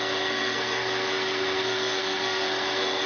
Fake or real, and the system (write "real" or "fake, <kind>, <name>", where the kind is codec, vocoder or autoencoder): fake, codec, SNAC